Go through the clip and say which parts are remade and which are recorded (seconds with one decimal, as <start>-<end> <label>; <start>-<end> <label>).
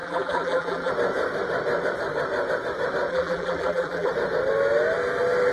0.0-0.9 remade; 0.9-3.1 recorded; 3.1-4.1 remade; 4.1-5.5 recorded